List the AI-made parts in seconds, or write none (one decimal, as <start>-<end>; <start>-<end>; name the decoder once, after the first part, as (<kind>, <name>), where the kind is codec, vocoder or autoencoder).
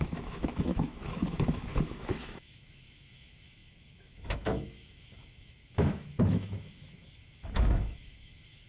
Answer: 0.0-8.7 (autoencoder, DAC-VAE)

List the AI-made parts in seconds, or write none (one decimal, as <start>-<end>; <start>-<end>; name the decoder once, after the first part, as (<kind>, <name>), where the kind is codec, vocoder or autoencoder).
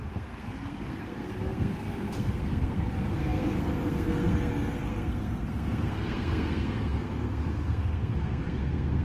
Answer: 0.0-9.0 (codec, SNAC)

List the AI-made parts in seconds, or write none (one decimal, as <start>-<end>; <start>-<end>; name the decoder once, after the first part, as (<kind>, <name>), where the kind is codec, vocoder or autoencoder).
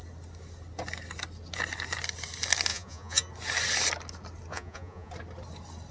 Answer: 2.7-3.3 (vocoder, Vocos); 4.5-5.1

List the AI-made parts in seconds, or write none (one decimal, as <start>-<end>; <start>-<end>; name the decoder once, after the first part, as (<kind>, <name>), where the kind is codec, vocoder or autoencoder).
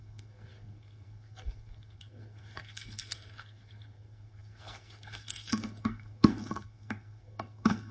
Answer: 0.0-7.9 (codec, SNAC)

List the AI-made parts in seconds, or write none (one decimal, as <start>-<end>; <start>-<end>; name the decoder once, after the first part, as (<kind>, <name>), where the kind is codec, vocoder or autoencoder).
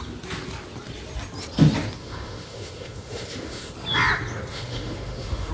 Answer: 2.0-3.7 (autoencoder, DAC-VAE); 4.5-5.5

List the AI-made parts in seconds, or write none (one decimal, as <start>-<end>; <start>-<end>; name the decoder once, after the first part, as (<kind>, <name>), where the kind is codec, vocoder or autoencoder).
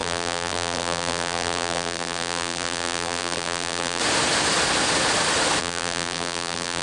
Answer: 0.0-4.0 (vocoder, BigVGAN v2); 5.6-6.8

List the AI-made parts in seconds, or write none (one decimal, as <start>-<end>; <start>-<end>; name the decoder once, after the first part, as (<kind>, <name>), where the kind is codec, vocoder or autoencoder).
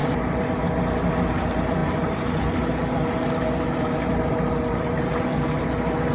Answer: none